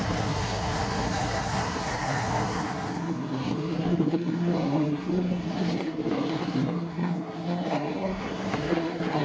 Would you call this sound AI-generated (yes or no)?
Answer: yes